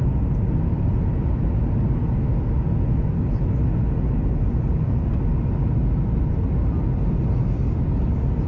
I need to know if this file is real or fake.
real